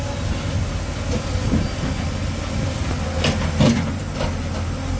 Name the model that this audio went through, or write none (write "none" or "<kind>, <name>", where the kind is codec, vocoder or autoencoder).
none